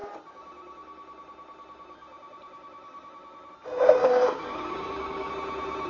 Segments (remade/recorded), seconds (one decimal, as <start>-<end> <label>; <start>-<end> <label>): 0.0-4.0 recorded; 4.0-5.3 remade; 5.3-5.9 recorded

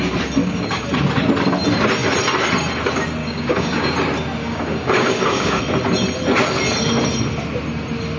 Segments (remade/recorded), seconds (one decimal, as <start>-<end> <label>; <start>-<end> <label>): 0.0-0.4 recorded; 0.4-0.9 remade; 0.9-3.2 recorded; 3.2-3.9 remade; 3.9-4.4 recorded; 4.4-5.6 remade; 5.6-8.2 recorded

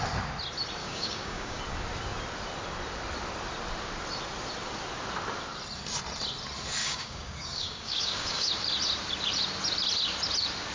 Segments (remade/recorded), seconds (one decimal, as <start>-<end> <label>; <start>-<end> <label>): 0.0-0.8 recorded; 0.8-1.6 remade; 1.6-6.8 recorded; 6.8-8.5 remade; 8.5-10.7 recorded

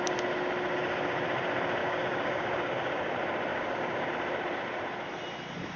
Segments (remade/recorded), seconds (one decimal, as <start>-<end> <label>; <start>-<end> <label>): 0.0-1.8 recorded; 1.8-3.1 remade; 3.1-3.5 recorded; 3.5-4.1 remade; 4.1-5.8 recorded

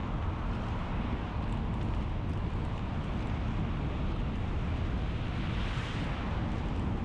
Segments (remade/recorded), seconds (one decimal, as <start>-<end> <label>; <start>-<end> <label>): 0.0-7.0 recorded

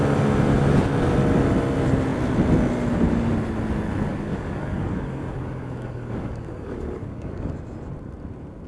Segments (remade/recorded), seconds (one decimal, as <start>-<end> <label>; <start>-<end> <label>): 0.0-4.1 recorded; 4.1-7.5 remade; 7.5-8.7 recorded

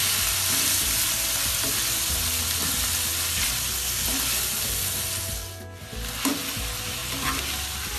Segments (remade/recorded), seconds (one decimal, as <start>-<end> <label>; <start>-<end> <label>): 0.0-8.0 recorded

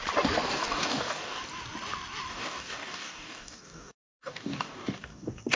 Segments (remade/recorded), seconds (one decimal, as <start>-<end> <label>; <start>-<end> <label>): 0.0-0.5 recorded; 0.5-1.4 remade; 1.4-2.3 recorded; 2.3-5.6 remade